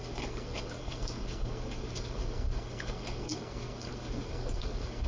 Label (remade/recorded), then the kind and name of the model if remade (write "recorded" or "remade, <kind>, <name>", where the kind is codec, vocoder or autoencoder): remade, codec, SNAC